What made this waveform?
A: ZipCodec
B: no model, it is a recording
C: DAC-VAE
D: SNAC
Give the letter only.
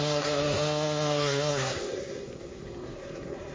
D